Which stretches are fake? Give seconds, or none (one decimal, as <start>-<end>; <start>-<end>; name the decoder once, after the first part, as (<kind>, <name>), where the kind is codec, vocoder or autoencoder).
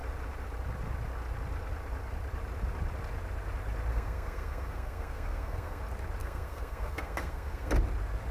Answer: 3.9-5.8 (codec, SNAC); 6.2-7.7